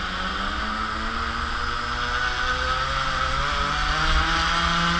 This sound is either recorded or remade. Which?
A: recorded